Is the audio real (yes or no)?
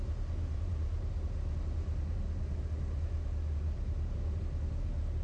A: yes